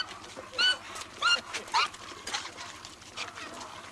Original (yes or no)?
yes